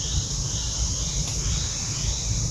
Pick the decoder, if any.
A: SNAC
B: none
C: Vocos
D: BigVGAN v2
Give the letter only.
B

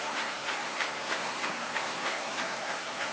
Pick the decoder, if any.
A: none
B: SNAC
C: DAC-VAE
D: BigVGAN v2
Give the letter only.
B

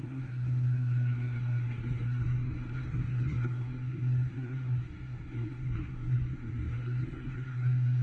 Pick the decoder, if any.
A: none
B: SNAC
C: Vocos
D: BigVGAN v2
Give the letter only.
B